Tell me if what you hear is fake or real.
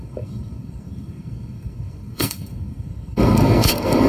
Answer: fake